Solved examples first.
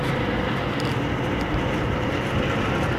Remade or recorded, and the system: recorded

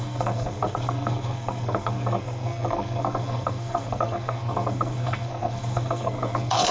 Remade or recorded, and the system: remade, codec, SNAC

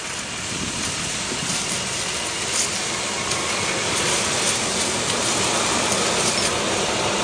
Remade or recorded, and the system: recorded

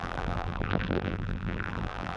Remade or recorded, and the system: remade, vocoder, BigVGAN v2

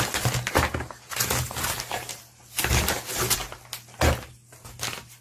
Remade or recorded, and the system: recorded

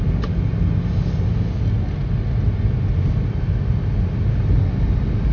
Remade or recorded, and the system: recorded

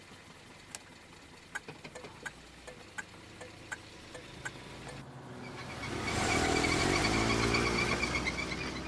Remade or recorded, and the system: recorded